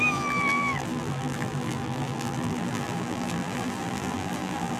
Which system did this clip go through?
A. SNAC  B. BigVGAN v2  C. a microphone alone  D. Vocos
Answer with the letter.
B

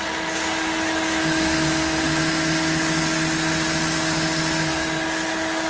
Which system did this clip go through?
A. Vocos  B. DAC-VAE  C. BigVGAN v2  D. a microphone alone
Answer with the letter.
D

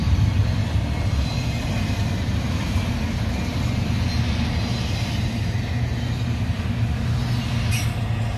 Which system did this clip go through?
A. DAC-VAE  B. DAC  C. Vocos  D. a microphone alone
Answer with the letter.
D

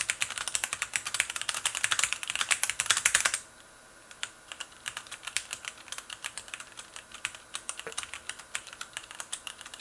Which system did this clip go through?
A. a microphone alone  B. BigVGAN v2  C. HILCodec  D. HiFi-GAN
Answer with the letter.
A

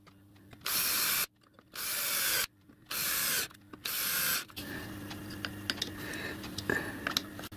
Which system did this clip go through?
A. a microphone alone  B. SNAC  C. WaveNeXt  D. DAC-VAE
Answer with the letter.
A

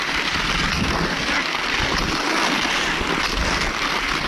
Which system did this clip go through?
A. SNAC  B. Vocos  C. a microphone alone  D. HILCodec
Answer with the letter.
C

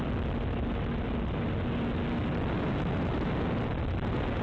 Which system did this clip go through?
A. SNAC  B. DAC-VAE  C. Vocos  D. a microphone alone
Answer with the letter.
D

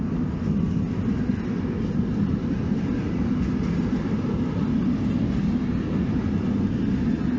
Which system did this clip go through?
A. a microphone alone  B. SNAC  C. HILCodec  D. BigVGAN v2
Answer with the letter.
A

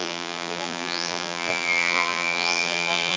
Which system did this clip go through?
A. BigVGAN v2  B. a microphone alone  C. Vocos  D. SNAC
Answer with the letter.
A